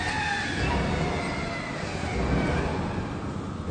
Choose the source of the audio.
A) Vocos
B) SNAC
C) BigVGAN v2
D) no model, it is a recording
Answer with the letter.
D